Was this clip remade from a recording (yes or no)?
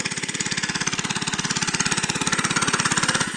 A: yes